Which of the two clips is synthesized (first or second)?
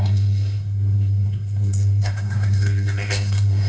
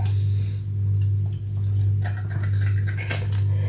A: first